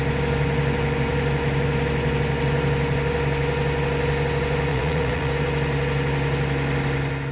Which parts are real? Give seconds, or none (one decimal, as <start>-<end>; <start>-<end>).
0.0-4.7; 5.3-7.3